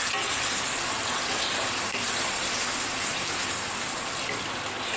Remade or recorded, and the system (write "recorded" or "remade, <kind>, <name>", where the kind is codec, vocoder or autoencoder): recorded